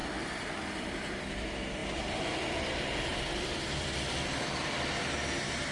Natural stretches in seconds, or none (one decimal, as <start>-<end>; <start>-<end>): 1.3-1.8; 2.5-3.1; 4.9-5.7